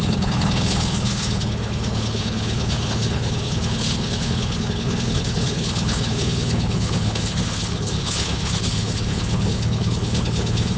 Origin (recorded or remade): remade